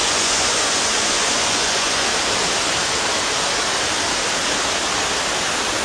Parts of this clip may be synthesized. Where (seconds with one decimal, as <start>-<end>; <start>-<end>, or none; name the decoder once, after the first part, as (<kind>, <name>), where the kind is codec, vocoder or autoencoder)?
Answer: 0.0-2.1 (vocoder, Vocos)